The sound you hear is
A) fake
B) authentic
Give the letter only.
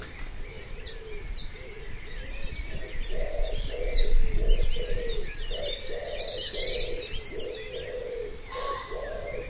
B